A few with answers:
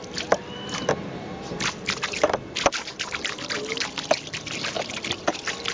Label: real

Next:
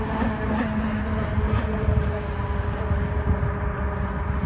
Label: real